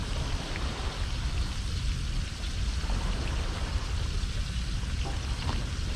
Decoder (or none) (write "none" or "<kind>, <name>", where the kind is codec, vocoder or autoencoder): none